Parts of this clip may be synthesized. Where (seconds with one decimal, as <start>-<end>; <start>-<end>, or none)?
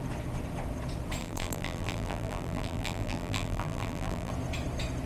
1.2-4.3